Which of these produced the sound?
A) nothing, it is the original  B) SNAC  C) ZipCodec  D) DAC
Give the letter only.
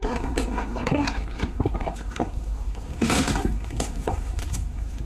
B